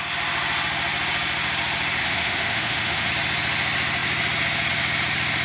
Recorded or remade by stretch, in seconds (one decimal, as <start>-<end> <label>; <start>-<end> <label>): 0.0-2.0 recorded; 2.0-3.1 remade; 3.1-5.4 recorded